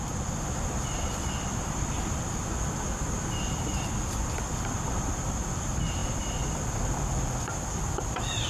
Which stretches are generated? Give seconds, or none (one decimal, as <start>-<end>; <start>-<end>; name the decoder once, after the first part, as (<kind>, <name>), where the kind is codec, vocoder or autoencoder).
0.0-8.5 (vocoder, BigVGAN v2)